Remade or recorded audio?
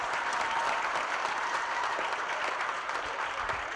remade